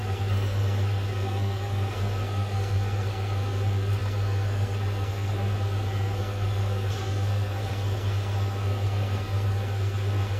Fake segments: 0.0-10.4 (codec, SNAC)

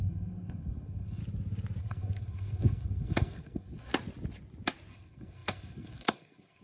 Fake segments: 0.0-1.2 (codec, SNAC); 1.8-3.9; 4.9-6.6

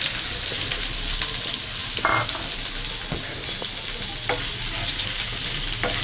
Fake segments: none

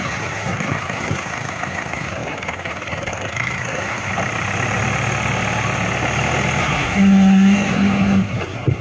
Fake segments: 0.0-4.1 (codec, SNAC); 6.6-8.8

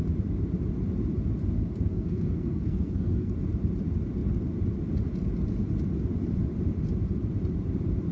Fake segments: 1.9-3.3 (codec, SNAC)